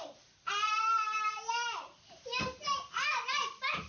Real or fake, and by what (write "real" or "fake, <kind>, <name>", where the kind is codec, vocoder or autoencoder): real